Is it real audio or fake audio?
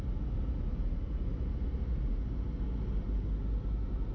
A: real